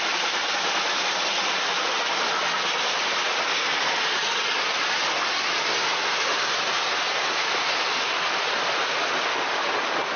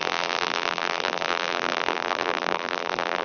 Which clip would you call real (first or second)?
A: first